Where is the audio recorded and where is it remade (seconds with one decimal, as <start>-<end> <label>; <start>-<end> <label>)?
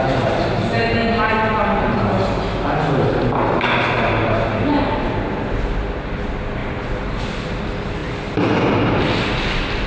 0.0-9.9 recorded